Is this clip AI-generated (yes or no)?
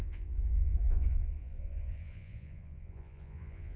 yes